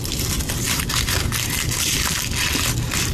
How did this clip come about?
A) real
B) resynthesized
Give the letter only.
A